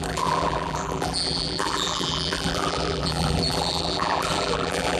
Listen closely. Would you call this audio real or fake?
fake